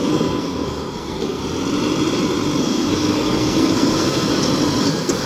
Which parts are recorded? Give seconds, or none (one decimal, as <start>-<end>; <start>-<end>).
1.4-2.6; 4.3-4.8